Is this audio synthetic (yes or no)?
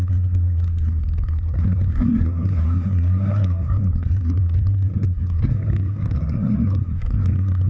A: yes